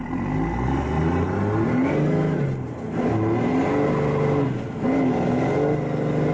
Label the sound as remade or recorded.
recorded